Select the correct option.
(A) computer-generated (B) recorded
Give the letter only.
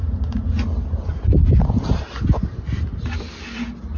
B